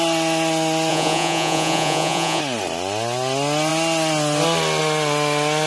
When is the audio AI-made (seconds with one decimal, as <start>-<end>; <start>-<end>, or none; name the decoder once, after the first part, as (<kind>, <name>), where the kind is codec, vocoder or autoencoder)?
0.9-2.4 (vocoder, Vocos)